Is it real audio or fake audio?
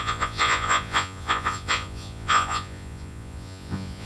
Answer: fake